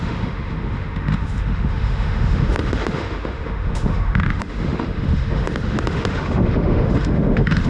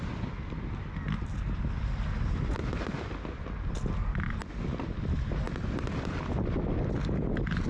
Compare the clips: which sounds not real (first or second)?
first